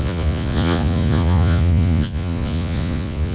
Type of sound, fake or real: fake